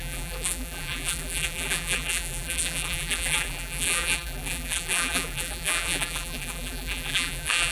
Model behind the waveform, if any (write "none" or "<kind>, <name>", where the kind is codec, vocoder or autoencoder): vocoder, BigVGAN v2